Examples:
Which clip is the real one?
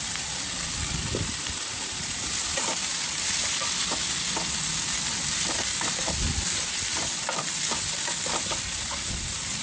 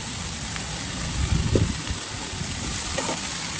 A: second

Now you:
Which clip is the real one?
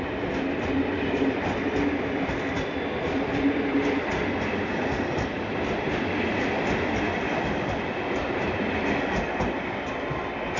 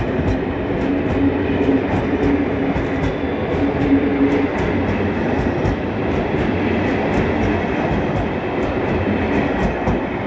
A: second